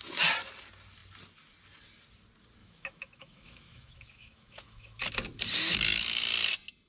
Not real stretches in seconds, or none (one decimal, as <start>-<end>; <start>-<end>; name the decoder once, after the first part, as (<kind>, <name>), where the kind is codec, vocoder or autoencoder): 2.6-5.0 (autoencoder, DAC-VAE)